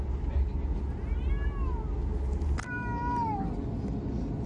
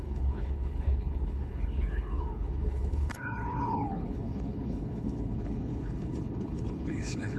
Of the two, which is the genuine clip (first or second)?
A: first